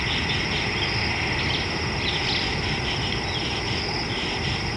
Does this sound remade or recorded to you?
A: recorded